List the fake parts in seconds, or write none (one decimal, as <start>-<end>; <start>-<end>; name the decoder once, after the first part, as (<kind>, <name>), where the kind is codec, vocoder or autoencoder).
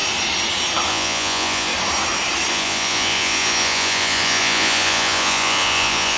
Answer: 0.9-1.7 (vocoder, Vocos); 2.5-6.2